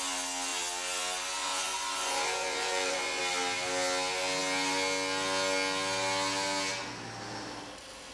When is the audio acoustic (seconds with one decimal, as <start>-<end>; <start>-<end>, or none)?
0.0-1.4; 3.2-8.1